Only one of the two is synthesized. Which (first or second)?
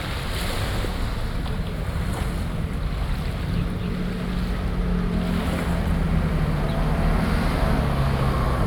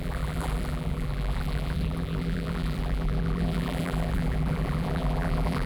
second